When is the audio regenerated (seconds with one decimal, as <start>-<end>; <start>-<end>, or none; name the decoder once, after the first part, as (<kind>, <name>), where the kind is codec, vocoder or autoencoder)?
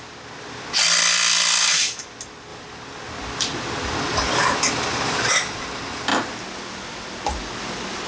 none